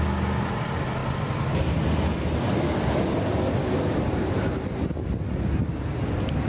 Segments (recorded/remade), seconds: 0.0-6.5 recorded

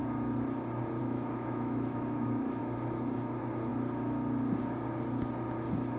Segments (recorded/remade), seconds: 0.0-1.0 recorded; 1.0-2.6 remade; 2.6-6.0 recorded

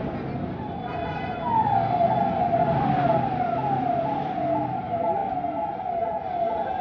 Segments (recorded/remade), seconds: 0.0-6.8 recorded

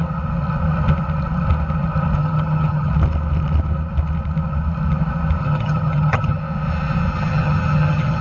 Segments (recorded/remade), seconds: 0.0-2.2 recorded; 2.2-2.9 remade; 2.9-5.4 recorded; 5.4-6.4 remade; 6.4-7.1 recorded; 7.1-8.2 remade